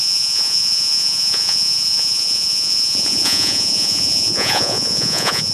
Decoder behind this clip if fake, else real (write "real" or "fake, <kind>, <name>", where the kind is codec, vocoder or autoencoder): fake, vocoder, Vocos